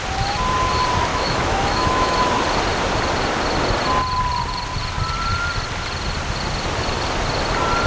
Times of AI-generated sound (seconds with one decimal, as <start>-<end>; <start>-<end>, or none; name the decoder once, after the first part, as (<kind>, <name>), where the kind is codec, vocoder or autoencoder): 1.1-2.3 (autoencoder, DAC-VAE)